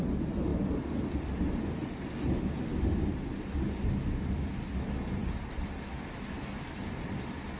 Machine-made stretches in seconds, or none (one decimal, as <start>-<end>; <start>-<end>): none